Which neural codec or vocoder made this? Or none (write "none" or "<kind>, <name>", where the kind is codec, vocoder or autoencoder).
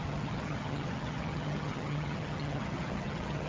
vocoder, HiFi-GAN